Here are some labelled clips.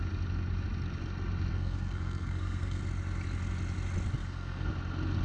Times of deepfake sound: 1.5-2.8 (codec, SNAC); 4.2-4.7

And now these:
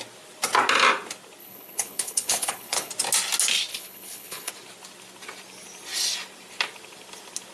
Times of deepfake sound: 1.4-2.9 (codec, HILCodec); 3.7-4.5

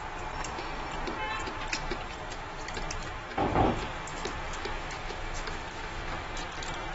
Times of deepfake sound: 4.1-6.0 (autoencoder, DAC-VAE)

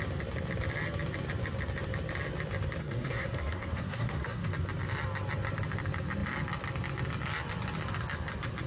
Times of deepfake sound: 2.8-4.5 (codec, SNAC)